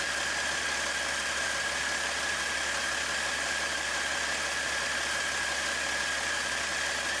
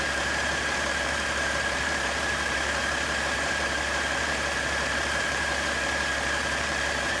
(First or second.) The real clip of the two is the first